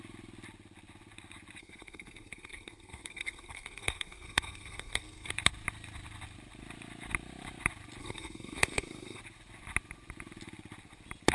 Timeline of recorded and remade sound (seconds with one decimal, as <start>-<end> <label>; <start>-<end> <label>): 0.0-1.6 recorded; 1.6-5.3 remade; 5.3-8.0 recorded; 8.0-9.2 remade; 9.2-11.3 recorded

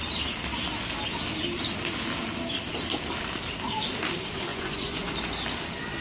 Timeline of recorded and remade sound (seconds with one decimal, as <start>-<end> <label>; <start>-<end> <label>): 0.0-4.5 recorded; 4.5-5.1 remade; 5.1-6.0 recorded

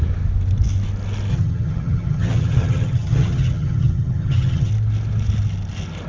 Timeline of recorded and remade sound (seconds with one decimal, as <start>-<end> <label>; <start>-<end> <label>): 0.0-1.3 recorded; 1.3-4.7 remade; 4.7-6.1 recorded